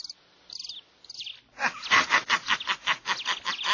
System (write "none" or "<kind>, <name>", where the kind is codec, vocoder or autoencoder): none